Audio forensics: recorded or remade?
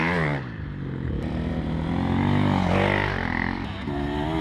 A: recorded